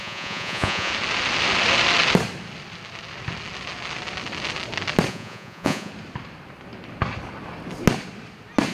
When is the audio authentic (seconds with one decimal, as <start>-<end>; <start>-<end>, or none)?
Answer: 0.9-5.1; 5.9-8.7